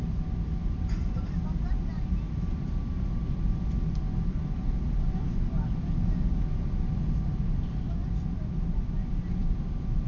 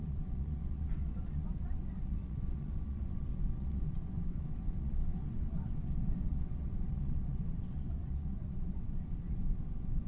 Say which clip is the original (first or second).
first